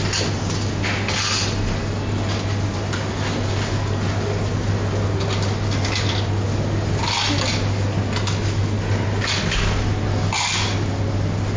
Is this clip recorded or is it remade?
recorded